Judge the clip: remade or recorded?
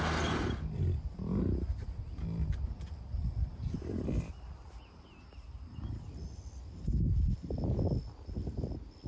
recorded